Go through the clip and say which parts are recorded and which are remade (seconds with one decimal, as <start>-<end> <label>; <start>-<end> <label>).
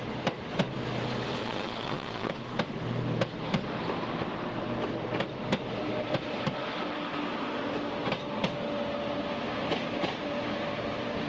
0.0-1.4 recorded; 1.4-2.3 remade; 2.3-11.3 recorded